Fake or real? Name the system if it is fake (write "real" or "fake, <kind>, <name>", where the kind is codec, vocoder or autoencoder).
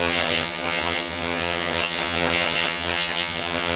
fake, vocoder, HiFi-GAN